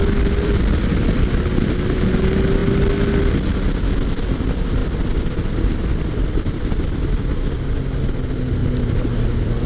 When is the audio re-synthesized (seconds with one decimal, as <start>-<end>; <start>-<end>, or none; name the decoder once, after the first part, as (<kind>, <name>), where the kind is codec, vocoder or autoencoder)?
0.0-1.2 (vocoder, BigVGAN v2); 4.8-6.6; 8.6-9.7